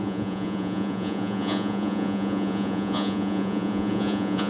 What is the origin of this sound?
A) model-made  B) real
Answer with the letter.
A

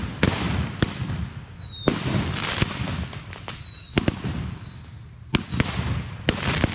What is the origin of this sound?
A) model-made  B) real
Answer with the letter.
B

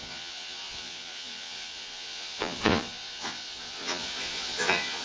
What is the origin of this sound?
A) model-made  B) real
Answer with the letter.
A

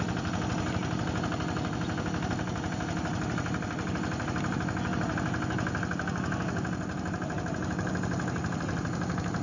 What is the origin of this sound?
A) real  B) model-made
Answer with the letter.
A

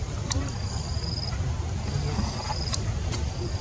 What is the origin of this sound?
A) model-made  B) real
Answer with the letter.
B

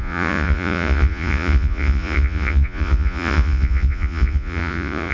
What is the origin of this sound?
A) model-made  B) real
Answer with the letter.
A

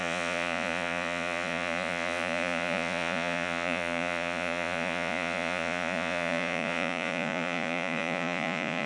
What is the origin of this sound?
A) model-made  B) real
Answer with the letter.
A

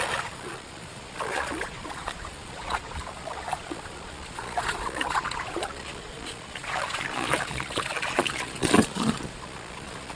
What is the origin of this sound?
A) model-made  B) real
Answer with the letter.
A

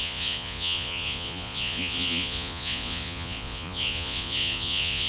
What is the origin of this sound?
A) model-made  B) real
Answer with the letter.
A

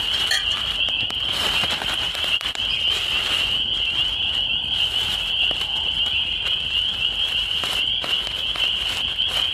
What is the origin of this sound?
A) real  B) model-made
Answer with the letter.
A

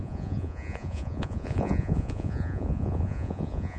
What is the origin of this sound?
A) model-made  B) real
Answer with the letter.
A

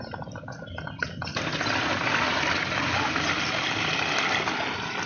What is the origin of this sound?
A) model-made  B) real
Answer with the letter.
B